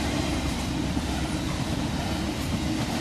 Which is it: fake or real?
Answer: fake